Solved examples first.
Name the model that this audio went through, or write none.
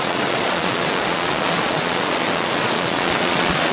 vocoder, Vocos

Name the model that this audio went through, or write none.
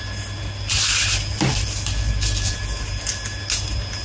none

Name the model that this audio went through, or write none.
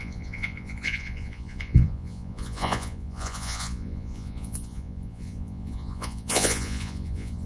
vocoder, Vocos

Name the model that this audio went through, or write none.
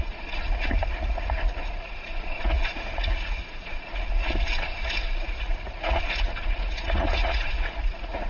vocoder, Vocos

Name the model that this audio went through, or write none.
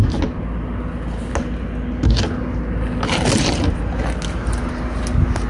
none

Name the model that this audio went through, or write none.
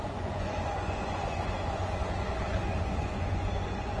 vocoder, Vocos